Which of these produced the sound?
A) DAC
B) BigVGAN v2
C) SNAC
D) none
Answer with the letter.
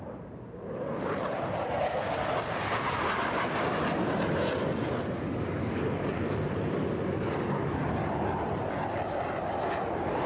D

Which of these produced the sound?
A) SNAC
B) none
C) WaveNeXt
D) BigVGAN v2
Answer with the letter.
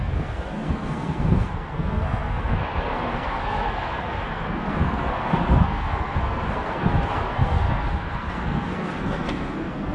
A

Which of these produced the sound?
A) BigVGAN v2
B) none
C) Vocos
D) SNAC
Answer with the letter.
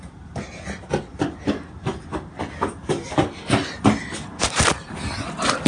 B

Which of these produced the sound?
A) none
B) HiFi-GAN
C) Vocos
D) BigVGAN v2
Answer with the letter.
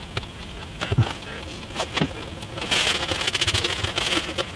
A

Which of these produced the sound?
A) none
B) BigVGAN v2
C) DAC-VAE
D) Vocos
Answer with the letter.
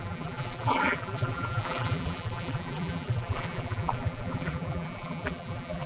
B